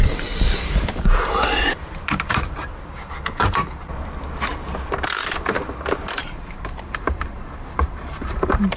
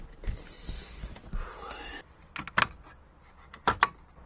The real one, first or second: second